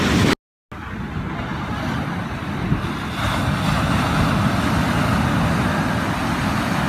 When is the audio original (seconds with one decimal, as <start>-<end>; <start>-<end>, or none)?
0.0-6.9